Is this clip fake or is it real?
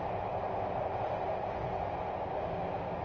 real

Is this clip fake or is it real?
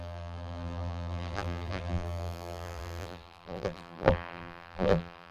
fake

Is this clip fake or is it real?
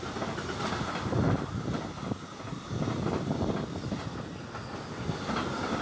real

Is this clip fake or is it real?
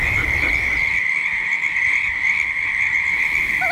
real